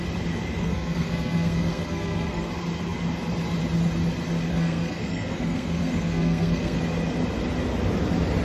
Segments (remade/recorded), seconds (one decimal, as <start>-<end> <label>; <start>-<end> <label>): 0.0-0.6 recorded; 0.6-2.5 remade; 2.5-4.5 recorded; 4.5-6.8 remade; 6.8-8.4 recorded